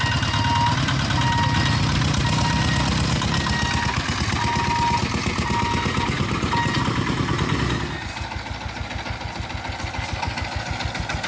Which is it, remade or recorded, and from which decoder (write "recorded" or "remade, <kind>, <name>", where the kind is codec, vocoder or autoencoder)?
recorded